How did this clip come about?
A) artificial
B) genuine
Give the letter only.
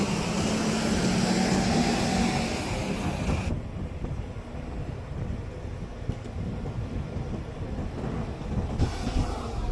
B